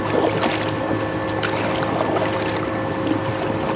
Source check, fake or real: real